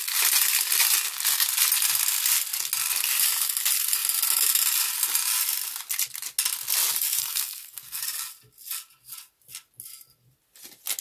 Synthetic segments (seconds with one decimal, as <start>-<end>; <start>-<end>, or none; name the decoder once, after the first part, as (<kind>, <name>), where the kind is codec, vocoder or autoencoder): 7.2-8.0 (codec, SNAC)